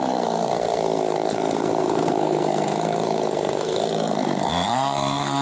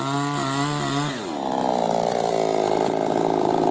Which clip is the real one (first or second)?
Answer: second